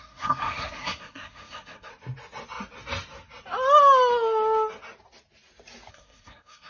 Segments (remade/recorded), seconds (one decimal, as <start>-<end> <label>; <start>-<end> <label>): 0.0-1.9 remade; 1.9-5.9 recorded; 5.9-6.7 remade